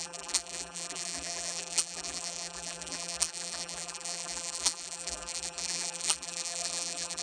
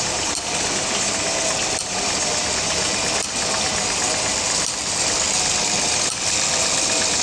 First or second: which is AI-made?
first